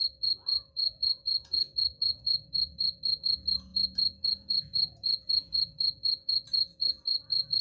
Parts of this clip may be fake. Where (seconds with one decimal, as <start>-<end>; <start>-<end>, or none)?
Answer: 0.0-7.6